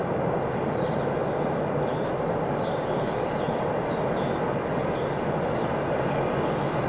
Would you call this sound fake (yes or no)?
no